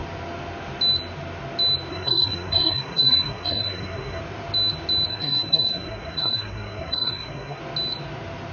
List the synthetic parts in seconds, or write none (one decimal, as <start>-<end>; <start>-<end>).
1.9-4.2; 5.1-7.6